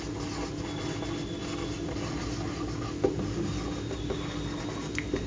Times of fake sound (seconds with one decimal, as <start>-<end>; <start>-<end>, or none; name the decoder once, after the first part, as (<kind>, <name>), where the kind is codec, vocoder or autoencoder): none